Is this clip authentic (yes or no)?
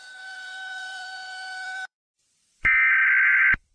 no